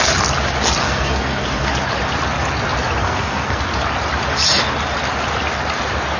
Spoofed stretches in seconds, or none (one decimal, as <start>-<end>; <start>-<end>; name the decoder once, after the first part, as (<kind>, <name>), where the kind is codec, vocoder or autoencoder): 0.8-1.7 (codec, SNAC); 3.0-3.6